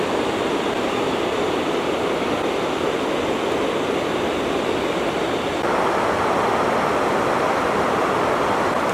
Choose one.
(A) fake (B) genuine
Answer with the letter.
A